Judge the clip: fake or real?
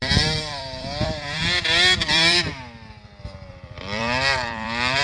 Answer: fake